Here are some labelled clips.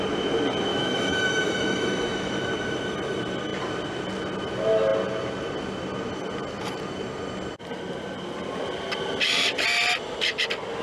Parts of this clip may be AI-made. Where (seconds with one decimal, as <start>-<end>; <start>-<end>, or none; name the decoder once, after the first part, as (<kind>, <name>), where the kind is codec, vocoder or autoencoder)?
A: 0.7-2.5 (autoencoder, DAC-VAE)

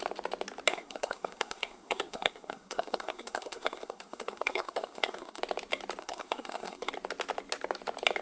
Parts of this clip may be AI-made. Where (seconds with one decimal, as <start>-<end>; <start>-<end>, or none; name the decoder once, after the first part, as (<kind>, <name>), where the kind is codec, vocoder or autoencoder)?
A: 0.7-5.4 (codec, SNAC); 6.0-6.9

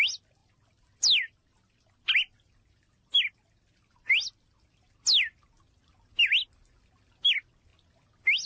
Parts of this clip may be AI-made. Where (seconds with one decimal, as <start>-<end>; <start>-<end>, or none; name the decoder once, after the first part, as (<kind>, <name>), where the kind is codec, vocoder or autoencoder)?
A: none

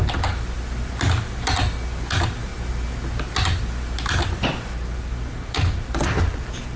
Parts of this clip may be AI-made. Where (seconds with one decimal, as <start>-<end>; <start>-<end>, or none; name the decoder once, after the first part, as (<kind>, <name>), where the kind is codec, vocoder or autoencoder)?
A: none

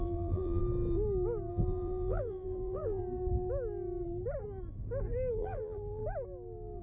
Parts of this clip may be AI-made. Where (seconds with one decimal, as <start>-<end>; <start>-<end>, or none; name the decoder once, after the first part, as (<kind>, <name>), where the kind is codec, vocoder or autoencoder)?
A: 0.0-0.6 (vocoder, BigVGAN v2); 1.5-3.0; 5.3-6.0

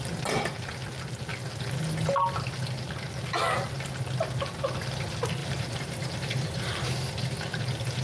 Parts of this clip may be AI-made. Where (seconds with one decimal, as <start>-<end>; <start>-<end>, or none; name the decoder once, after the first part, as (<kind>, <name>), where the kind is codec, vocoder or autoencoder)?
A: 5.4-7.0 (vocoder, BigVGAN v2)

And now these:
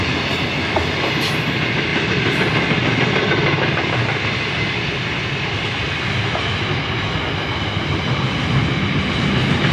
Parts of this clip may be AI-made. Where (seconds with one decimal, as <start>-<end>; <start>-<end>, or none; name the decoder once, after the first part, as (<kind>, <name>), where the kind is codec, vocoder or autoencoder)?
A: none

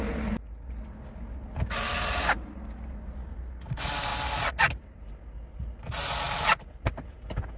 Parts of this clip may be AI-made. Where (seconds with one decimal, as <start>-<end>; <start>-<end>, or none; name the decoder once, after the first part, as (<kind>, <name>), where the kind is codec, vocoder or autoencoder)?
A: none